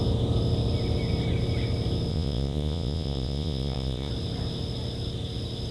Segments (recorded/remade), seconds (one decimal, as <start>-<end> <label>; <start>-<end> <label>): 0.0-2.1 recorded; 2.1-4.1 remade; 4.1-5.7 recorded